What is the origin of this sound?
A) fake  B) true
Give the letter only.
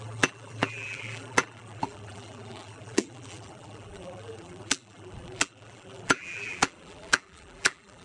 A